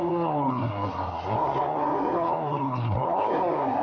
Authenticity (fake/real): fake